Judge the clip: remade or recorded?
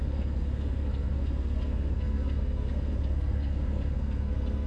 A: remade